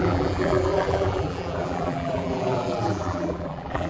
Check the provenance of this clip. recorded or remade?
remade